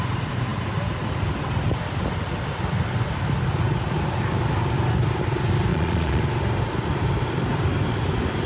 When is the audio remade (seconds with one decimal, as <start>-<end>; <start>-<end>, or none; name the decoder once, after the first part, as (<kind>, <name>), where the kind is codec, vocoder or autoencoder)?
5.7-6.2 (vocoder, Vocos)